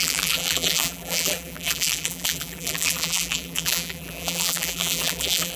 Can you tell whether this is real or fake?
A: fake